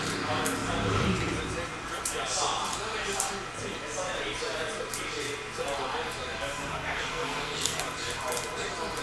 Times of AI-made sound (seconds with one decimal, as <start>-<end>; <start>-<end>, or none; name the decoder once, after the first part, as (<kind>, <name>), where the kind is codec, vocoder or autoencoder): 6.6-7.8 (codec, SNAC)